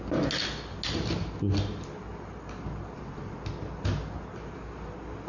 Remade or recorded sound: recorded